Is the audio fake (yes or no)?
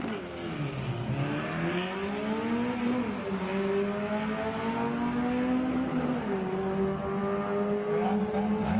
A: no